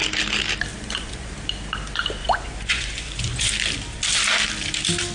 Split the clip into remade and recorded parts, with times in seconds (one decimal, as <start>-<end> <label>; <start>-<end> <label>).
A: 0.0-0.7 recorded; 0.7-1.3 remade; 1.3-2.2 recorded; 2.2-3.5 remade; 3.5-5.1 recorded